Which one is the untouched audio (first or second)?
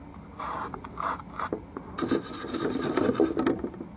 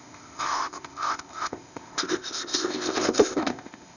first